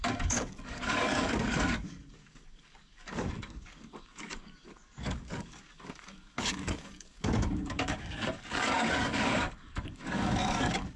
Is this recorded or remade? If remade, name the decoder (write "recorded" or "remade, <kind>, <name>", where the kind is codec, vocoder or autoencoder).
remade, codec, DAC